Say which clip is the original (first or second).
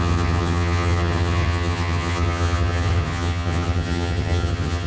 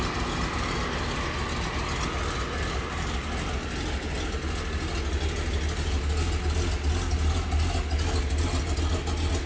second